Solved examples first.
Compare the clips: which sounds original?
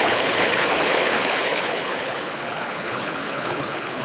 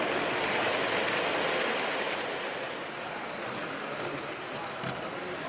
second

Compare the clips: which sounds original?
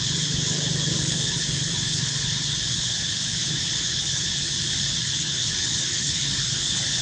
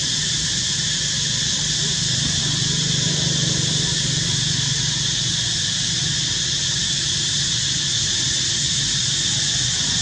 second